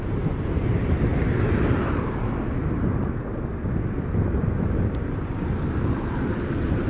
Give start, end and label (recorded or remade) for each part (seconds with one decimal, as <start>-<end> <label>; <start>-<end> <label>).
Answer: 0.0-1.1 remade; 1.1-3.1 recorded; 3.1-3.5 remade; 3.5-4.6 recorded; 4.6-6.9 remade